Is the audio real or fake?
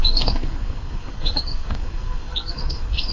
fake